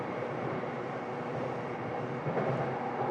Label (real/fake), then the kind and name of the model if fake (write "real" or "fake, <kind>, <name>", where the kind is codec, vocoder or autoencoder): real